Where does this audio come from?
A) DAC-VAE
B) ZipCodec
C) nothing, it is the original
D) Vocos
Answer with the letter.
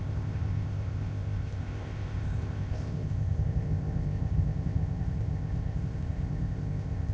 B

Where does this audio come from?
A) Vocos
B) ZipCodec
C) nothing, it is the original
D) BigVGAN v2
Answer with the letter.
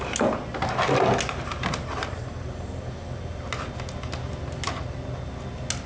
C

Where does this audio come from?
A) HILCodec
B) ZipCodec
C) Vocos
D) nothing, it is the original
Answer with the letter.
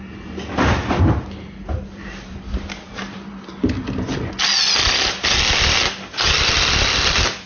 D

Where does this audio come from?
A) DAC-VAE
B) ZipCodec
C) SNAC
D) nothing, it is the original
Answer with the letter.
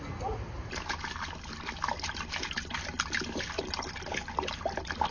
D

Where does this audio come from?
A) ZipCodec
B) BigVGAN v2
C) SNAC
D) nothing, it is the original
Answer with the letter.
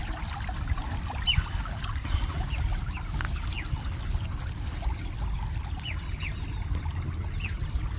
D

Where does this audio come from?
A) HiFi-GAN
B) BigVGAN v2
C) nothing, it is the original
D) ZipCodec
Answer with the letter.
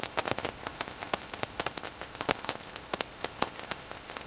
D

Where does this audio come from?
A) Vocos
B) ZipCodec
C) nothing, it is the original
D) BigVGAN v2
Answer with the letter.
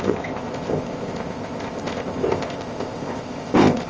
B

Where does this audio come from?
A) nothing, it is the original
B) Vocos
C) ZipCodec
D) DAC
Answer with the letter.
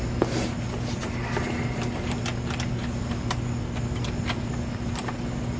A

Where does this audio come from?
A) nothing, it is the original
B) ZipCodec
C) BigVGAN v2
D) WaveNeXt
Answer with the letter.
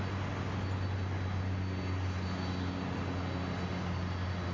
A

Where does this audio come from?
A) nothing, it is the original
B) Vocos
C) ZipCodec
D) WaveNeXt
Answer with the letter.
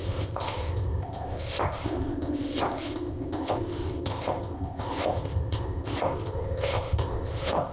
C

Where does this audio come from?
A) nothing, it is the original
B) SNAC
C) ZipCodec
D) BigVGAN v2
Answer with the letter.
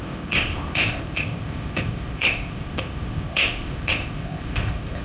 C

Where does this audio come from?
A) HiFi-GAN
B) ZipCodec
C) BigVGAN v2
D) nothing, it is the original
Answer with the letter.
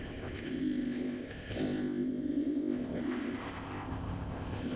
B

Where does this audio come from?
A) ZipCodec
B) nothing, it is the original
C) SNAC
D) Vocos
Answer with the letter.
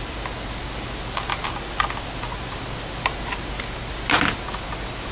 B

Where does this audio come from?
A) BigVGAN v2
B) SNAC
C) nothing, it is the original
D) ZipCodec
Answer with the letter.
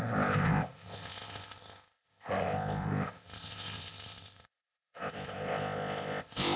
D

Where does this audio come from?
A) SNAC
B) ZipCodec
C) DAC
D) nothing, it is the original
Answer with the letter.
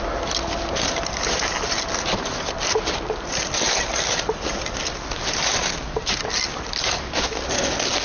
D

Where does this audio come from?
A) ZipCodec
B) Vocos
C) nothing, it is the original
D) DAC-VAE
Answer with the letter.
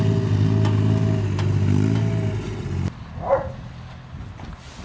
C